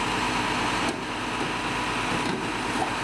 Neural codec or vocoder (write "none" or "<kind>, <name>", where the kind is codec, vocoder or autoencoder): none